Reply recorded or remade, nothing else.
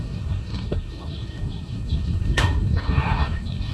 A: remade